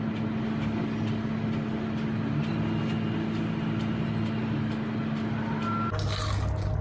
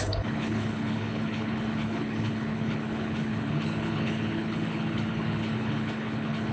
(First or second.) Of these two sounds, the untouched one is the first